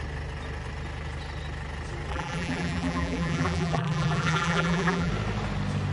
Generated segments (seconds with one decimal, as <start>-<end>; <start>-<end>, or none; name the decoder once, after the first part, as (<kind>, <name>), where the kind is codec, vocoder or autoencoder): 2.1-5.1 (vocoder, BigVGAN v2)